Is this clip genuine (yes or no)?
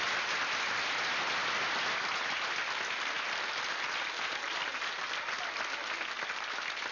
yes